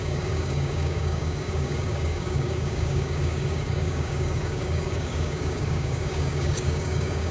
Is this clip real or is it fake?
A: fake